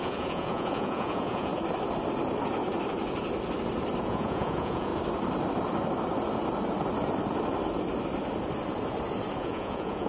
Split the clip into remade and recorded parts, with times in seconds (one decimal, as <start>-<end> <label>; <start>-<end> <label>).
0.0-1.5 remade; 1.5-4.0 recorded; 4.0-4.9 remade; 4.9-9.4 recorded; 9.4-10.1 remade